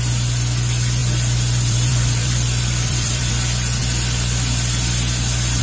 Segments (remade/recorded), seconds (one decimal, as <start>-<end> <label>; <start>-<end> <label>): 0.0-1.0 recorded; 1.0-3.3 remade; 3.3-5.6 recorded